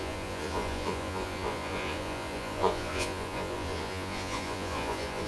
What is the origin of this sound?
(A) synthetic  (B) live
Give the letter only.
A